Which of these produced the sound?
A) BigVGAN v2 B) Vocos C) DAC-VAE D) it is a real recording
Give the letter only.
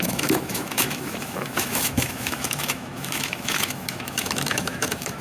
C